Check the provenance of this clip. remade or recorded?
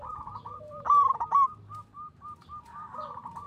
remade